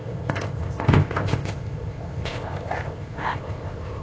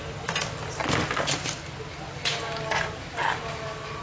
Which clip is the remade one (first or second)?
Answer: first